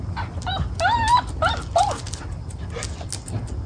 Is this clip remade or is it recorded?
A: recorded